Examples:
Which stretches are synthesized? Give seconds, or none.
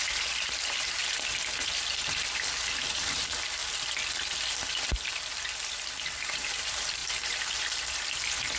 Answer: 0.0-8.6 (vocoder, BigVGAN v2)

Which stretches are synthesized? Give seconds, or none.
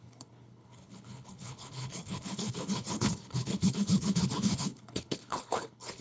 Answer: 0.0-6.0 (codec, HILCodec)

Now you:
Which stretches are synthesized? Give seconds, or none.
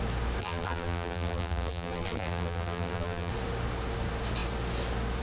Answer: 0.4-3.3 (vocoder, BigVGAN v2)